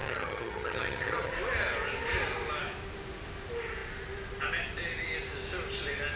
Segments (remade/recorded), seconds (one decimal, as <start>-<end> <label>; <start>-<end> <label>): 0.0-1.3 remade; 1.3-6.2 recorded